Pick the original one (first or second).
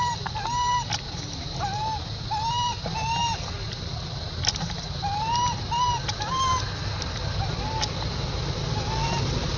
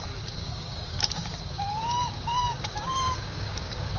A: first